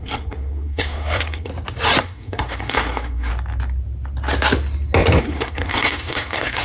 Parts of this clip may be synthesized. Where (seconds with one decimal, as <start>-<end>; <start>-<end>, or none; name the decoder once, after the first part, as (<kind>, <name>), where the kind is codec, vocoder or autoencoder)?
0.0-1.5 (codec, SNAC); 2.0-3.3; 5.2-6.6